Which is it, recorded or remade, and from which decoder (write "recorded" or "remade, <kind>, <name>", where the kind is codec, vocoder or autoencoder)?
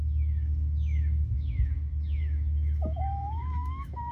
remade, autoencoder, DAC-VAE